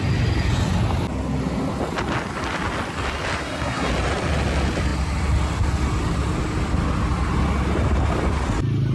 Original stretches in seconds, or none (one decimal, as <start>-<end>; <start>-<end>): 0.0-3.4; 3.9-8.9